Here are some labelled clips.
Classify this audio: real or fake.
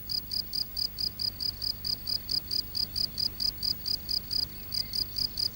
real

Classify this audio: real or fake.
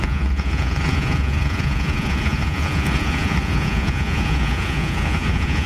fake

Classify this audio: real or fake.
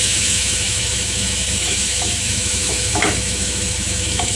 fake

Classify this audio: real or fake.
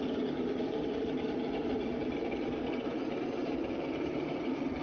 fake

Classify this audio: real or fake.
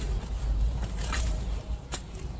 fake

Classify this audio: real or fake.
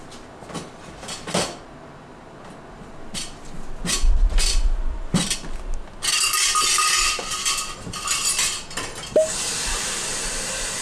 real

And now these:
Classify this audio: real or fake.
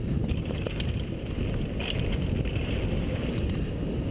real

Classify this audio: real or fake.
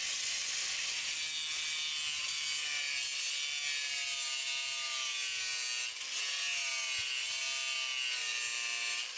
real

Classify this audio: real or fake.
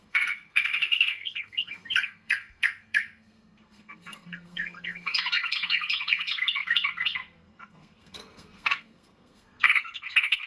fake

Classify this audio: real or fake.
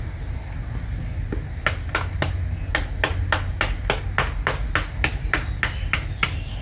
real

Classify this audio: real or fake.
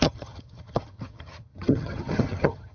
fake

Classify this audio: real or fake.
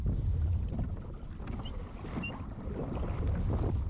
real